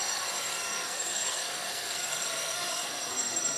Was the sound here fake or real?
fake